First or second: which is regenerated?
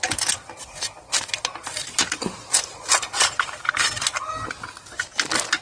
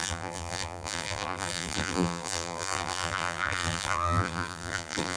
second